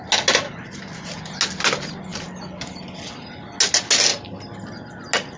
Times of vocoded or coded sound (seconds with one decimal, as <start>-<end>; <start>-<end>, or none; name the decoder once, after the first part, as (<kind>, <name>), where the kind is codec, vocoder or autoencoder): none